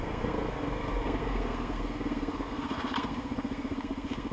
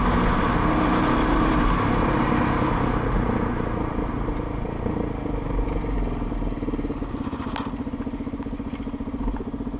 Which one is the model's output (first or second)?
first